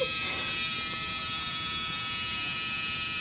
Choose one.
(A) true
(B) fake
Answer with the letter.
B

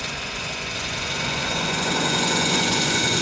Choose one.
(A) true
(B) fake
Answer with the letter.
B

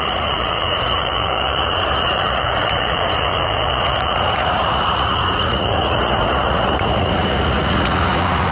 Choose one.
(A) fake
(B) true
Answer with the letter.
A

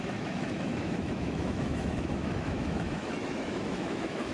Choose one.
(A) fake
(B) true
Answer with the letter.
A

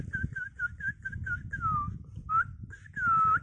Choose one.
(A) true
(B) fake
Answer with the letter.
A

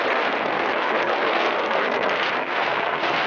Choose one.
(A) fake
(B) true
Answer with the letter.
A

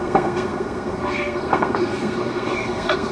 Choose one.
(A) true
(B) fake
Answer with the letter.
B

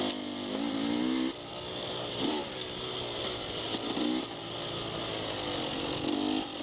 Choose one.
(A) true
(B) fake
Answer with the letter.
A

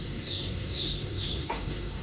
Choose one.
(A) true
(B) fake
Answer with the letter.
B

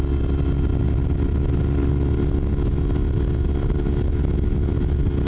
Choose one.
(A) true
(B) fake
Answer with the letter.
A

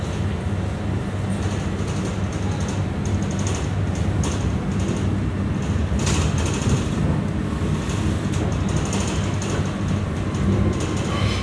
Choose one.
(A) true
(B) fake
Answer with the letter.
A